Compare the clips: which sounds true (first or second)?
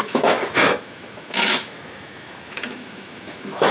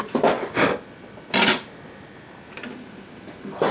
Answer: second